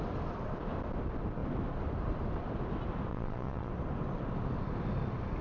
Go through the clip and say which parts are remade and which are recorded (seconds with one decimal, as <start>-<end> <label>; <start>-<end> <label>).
0.0-3.1 recorded; 3.1-3.7 remade; 3.7-5.4 recorded